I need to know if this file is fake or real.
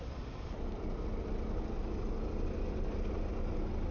real